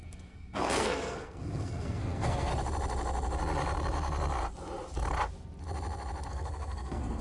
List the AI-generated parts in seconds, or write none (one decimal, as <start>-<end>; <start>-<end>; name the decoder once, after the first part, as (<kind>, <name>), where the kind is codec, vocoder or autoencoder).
0.0-2.5 (codec, SNAC); 6.3-7.2